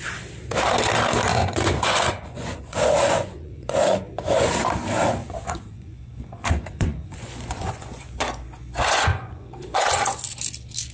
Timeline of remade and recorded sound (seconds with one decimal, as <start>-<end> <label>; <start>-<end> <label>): 0.0-1.3 recorded; 1.3-4.5 remade; 4.5-5.2 recorded; 5.2-10.2 remade; 10.2-10.9 recorded